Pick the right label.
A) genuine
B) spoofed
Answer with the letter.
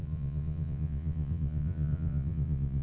B